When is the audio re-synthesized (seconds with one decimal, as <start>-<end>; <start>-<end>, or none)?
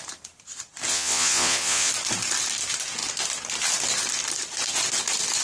0.9-1.9